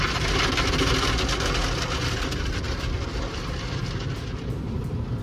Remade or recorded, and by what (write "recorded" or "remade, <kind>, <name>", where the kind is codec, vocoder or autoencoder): recorded